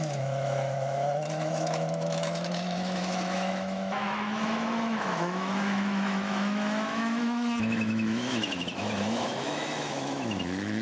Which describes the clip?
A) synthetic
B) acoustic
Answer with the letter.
A